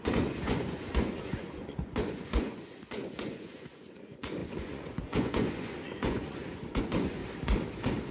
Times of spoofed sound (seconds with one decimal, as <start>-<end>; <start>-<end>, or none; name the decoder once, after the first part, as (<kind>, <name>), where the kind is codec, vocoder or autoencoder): 0.0-7.2 (vocoder, Vocos)

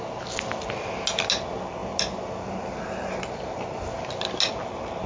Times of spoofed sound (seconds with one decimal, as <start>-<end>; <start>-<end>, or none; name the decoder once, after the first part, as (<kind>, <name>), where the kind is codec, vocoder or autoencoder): none

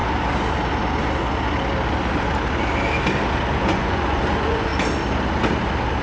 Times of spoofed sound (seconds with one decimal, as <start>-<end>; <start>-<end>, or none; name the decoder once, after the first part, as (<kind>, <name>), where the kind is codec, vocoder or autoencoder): 3.6-4.7 (vocoder, Vocos)